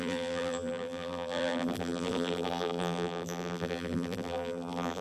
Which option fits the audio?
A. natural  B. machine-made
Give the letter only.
B